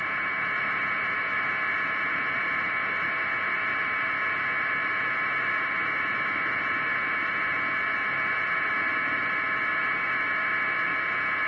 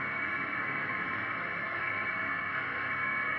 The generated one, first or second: second